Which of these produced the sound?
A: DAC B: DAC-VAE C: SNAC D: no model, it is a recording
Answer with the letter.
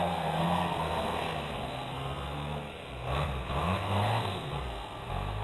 C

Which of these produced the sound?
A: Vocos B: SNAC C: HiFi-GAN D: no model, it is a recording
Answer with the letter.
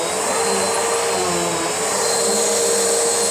D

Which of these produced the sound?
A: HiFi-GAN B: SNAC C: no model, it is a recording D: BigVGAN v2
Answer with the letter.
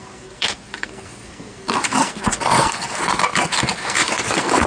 B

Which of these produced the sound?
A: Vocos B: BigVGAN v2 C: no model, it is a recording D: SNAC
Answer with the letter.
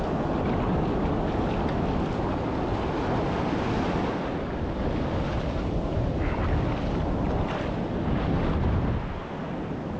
C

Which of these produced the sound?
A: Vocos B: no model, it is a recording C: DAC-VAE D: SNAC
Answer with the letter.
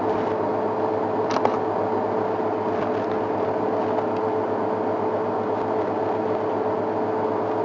B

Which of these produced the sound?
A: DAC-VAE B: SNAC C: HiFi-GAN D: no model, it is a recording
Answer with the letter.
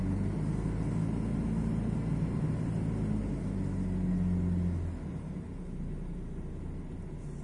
D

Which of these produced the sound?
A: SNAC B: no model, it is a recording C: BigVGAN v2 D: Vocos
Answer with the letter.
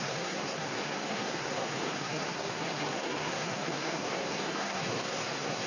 A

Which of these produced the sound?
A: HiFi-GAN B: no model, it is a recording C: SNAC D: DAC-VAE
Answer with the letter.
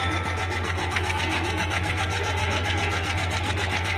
C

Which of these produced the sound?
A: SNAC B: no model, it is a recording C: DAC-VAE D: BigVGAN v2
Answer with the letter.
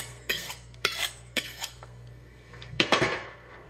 A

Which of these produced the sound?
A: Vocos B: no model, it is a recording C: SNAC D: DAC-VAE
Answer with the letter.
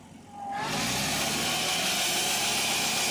B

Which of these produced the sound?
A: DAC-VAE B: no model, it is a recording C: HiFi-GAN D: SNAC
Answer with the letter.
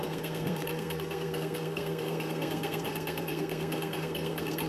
D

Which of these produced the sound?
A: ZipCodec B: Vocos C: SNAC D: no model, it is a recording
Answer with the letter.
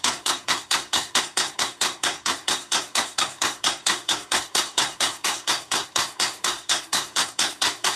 C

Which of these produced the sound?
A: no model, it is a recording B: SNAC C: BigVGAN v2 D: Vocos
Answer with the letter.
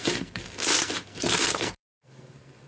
B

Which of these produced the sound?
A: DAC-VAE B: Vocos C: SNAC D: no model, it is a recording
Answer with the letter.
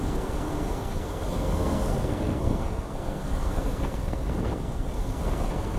C